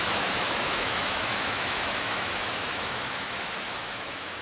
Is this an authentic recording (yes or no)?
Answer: no